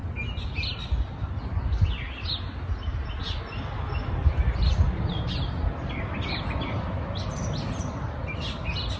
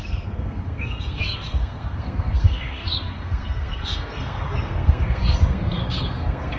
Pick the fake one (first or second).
second